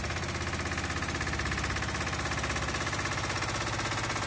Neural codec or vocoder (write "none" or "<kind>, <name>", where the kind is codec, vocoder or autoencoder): none